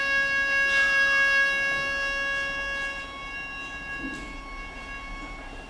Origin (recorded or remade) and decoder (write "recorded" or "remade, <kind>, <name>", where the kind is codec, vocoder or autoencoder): recorded